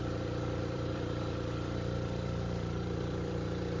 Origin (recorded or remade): remade